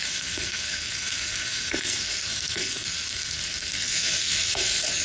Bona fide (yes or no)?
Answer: no